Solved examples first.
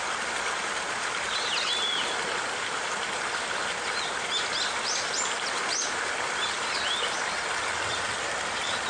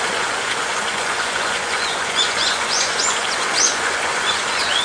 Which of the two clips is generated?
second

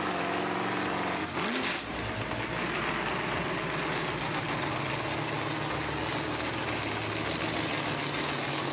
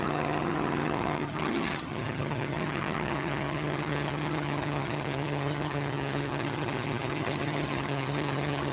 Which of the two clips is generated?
second